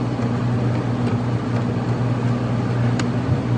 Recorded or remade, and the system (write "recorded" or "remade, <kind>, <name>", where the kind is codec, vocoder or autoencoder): recorded